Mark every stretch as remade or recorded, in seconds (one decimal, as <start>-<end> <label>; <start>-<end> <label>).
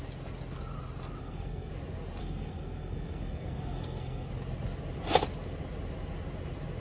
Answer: 0.0-1.2 recorded; 1.2-1.7 remade; 1.7-2.2 recorded; 2.2-4.3 remade; 4.3-6.8 recorded